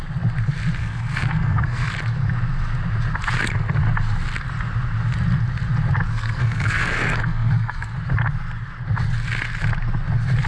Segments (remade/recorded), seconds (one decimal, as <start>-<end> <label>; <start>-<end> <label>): 0.0-0.8 recorded; 0.8-1.9 remade; 1.9-6.1 recorded; 6.1-7.9 remade; 7.9-10.5 recorded